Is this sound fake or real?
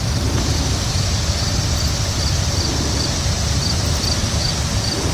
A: fake